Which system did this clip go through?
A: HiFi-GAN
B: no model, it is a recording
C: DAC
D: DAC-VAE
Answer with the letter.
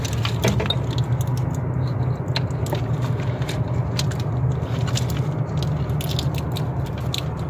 B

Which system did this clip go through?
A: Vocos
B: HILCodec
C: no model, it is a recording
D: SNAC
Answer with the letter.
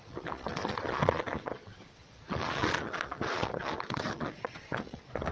A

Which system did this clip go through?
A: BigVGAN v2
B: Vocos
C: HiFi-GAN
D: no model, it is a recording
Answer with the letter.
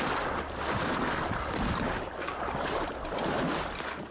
D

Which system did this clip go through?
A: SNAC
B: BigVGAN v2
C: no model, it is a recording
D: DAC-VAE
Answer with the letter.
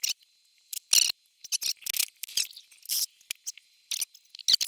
C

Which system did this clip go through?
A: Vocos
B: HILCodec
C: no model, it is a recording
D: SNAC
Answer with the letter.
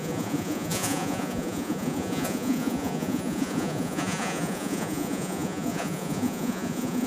A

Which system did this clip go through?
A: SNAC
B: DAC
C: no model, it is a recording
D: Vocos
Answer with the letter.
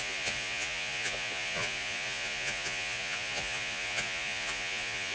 D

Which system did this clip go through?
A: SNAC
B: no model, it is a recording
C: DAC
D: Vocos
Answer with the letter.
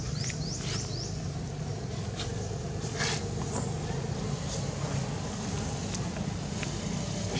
B